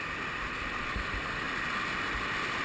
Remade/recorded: recorded